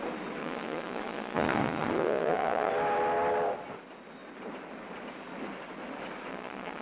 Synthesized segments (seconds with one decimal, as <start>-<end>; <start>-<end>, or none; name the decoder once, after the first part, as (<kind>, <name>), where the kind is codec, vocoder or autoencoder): 0.4-2.7 (vocoder, Vocos); 6.3-6.8